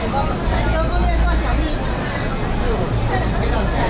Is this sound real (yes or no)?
yes